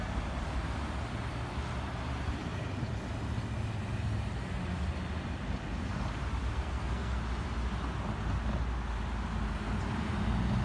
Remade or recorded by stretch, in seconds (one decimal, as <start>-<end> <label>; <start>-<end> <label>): 0.0-6.5 recorded; 6.5-7.2 remade; 7.2-10.6 recorded